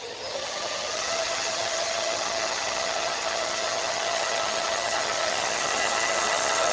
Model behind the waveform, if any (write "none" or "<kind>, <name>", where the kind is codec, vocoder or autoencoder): vocoder, HiFi-GAN